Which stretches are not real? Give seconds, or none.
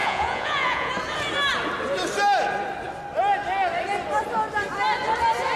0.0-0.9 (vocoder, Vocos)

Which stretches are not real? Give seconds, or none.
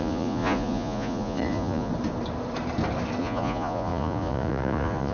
0.0-1.9 (vocoder, Vocos); 3.2-5.1